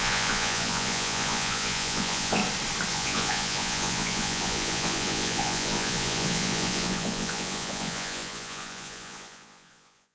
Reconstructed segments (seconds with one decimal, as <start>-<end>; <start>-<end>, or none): 0.0-2.4; 2.9-10.1